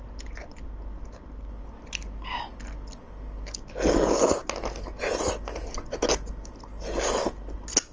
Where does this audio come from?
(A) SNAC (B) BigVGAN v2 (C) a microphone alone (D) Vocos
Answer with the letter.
C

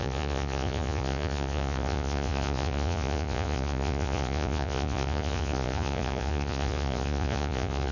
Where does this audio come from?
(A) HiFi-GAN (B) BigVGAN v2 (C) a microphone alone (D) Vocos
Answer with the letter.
D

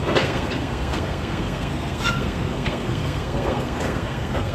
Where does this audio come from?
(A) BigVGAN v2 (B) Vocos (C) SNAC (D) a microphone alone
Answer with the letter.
C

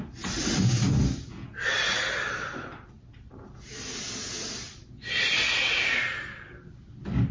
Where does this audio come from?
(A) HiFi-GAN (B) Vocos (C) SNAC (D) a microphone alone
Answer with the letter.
D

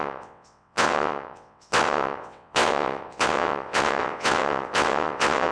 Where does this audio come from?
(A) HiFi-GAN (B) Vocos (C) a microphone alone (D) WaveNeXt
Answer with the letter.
D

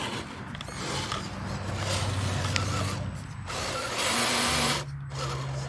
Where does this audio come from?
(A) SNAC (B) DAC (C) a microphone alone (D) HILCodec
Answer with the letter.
C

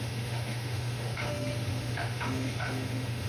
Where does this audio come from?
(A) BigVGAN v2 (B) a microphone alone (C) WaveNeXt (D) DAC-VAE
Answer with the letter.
D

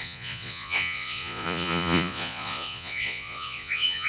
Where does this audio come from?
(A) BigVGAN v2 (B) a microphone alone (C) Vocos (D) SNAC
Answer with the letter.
C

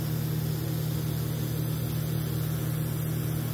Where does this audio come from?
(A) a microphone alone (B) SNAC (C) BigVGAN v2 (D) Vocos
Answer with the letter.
A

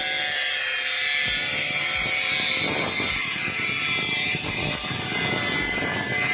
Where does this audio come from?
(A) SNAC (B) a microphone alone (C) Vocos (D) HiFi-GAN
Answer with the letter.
B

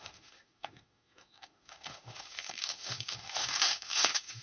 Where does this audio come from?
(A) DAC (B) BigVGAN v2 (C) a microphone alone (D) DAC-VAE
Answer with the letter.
D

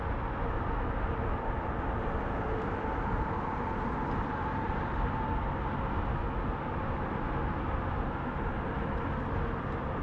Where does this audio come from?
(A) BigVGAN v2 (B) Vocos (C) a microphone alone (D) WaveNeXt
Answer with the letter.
C